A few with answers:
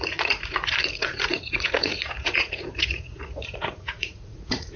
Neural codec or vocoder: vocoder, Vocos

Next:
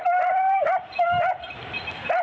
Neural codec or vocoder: none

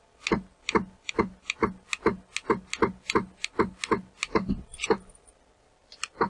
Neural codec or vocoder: none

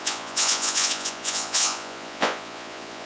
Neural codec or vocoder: vocoder, Vocos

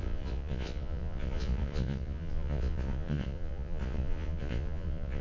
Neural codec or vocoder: vocoder, Vocos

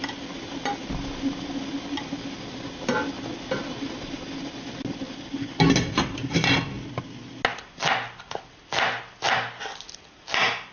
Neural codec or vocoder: none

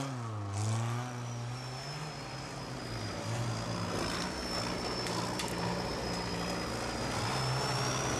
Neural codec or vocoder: none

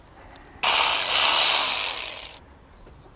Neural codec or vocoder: none